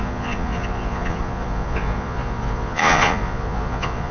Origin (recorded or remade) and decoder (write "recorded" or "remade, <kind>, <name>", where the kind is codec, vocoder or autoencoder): remade, vocoder, Vocos